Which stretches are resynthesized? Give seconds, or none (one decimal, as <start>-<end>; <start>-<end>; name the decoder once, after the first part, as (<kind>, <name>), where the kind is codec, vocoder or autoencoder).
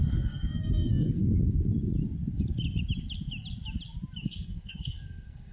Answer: 0.0-1.2 (codec, SNAC); 4.2-5.5